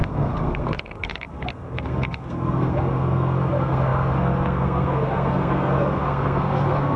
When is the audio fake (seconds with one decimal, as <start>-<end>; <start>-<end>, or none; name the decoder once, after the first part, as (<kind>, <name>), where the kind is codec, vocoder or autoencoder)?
0.0-7.0 (codec, SNAC)